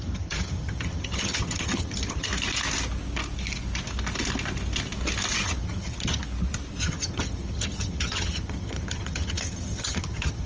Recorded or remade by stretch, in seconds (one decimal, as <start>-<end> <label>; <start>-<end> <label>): 0.0-2.3 remade; 2.3-5.4 recorded; 5.4-6.2 remade; 6.2-6.8 recorded; 6.8-10.5 remade